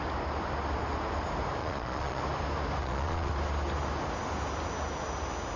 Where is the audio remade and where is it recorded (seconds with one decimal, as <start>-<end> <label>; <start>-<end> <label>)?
0.0-1.6 recorded; 1.6-2.2 remade; 2.2-2.8 recorded; 2.8-3.3 remade; 3.3-5.6 recorded